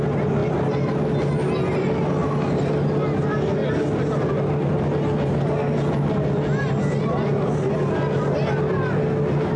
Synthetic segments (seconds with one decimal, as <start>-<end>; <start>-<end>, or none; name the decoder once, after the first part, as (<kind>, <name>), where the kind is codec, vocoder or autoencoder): none